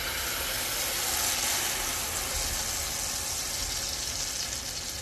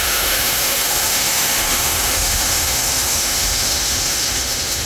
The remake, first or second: second